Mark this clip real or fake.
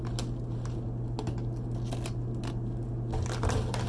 real